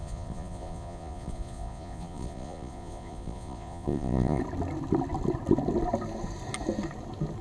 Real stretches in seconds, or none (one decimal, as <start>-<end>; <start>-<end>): 4.4-7.4